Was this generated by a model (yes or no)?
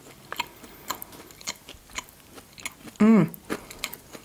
no